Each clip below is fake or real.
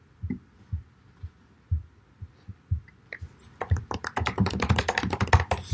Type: real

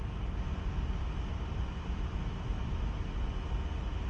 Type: real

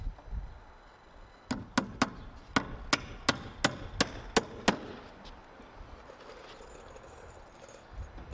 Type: real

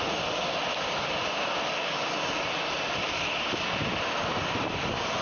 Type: real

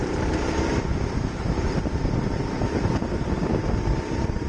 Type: fake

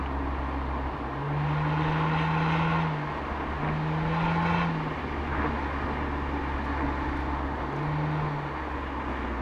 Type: real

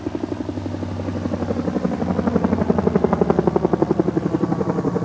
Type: real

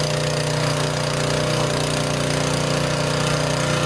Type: real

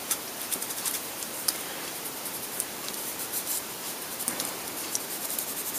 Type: fake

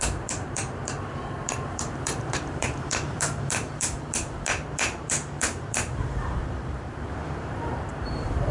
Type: fake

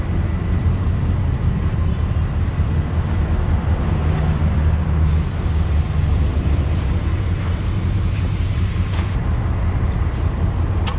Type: real